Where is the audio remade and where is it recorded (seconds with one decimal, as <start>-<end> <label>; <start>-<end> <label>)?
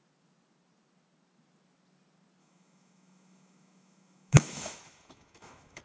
0.0-2.4 recorded; 2.4-5.8 remade